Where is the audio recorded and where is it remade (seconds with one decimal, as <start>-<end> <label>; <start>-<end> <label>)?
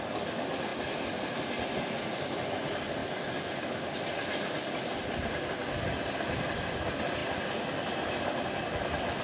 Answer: 0.0-9.2 recorded